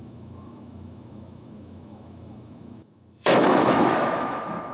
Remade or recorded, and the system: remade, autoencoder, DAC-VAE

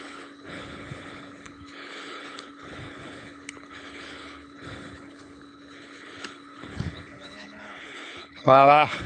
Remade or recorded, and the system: remade, codec, HILCodec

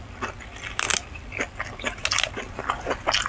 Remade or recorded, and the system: recorded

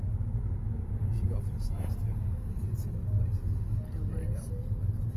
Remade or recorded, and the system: recorded